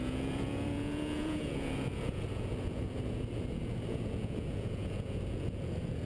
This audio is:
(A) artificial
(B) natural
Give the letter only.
A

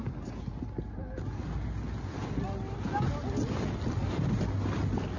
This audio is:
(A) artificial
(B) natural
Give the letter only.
B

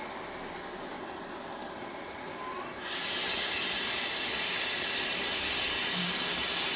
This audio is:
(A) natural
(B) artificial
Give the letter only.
A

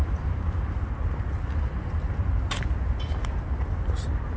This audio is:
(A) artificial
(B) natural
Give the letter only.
B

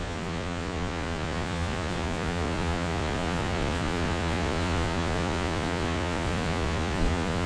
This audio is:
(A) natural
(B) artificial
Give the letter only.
B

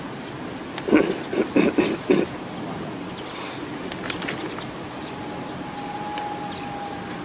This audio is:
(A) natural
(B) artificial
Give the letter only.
A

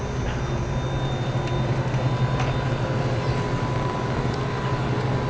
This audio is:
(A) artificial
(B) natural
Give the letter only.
B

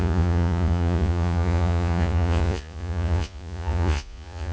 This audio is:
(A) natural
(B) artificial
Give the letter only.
B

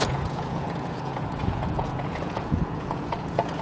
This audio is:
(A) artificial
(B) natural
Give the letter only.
A